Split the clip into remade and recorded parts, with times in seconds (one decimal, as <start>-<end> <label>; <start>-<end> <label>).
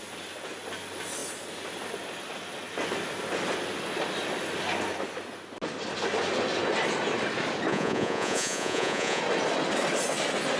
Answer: 0.0-7.7 recorded; 7.7-9.2 remade; 9.2-10.6 recorded